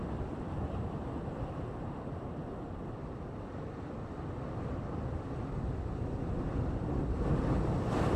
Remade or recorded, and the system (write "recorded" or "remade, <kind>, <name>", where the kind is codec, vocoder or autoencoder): recorded